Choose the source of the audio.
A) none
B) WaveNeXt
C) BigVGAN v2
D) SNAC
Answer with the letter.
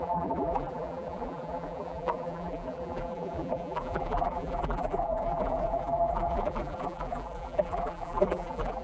C